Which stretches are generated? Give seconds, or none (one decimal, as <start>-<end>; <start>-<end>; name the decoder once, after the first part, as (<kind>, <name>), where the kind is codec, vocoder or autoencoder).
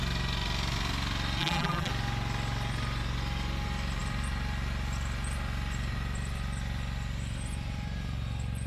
1.4-1.9 (vocoder, BigVGAN v2)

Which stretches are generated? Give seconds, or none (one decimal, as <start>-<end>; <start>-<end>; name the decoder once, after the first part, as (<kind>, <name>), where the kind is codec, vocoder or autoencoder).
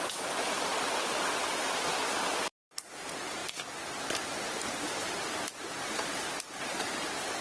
0.0-7.4 (vocoder, BigVGAN v2)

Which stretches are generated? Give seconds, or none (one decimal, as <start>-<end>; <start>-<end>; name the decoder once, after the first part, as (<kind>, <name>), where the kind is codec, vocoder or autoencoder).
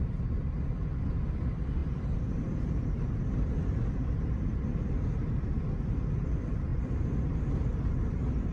1.8-6.1 (vocoder, BigVGAN v2)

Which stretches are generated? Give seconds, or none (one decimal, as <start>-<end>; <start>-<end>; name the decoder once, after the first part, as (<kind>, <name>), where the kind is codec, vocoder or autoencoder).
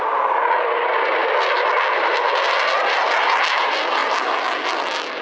none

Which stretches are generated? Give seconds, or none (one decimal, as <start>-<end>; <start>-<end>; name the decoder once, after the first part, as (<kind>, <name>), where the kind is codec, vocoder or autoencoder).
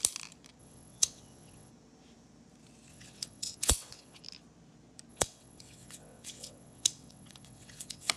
0.6-1.7 (vocoder, WaveNeXt); 2.9-4.2; 5.1-8.2